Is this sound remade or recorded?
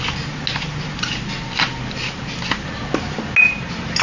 recorded